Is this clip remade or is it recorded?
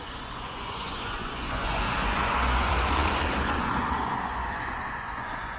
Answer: remade